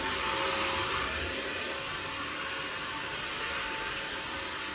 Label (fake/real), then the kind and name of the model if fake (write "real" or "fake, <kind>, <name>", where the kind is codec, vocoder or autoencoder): real